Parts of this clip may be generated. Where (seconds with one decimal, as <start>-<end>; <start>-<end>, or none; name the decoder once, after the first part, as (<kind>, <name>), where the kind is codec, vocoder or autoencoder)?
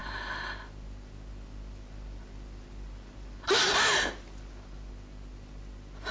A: none